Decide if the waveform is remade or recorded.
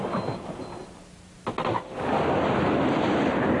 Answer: recorded